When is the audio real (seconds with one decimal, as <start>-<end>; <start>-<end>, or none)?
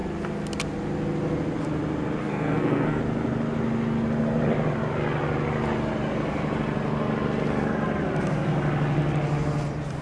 0.0-2.2; 3.0-10.0